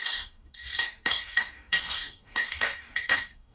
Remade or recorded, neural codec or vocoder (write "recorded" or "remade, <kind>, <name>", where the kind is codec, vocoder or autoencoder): remade, codec, DAC